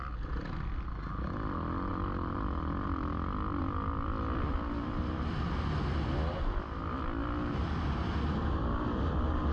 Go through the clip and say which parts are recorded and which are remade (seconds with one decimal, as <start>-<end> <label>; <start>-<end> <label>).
0.0-9.5 recorded